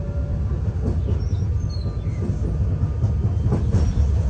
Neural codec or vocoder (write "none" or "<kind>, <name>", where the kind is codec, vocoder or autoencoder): none